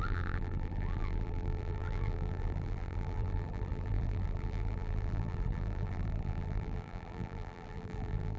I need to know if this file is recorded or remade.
remade